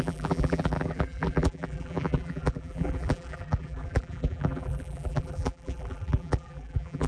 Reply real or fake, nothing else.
fake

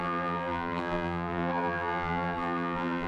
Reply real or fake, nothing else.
fake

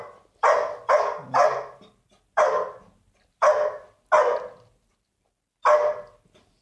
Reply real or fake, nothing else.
real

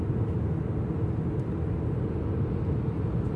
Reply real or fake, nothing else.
real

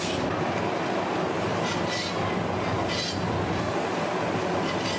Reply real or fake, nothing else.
real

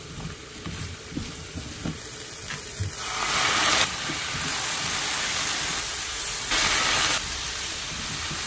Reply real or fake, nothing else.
real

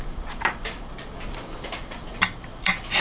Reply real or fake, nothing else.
fake